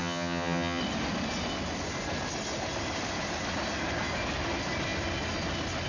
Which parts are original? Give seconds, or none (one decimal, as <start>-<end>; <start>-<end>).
0.8-5.9